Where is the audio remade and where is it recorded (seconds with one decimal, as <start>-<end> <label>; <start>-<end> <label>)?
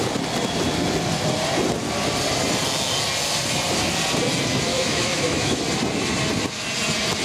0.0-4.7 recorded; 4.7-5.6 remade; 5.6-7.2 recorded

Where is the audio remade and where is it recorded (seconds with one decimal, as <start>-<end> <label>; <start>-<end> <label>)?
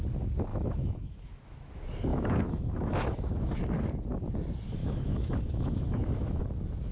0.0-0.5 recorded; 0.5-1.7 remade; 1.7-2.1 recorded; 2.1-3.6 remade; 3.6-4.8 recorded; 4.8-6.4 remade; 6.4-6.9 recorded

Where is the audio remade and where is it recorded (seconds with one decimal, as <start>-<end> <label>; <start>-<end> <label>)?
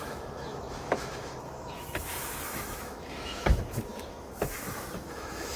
0.0-5.6 remade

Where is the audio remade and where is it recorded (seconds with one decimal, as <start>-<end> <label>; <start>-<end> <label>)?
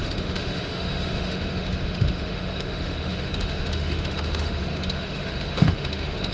0.0-6.3 remade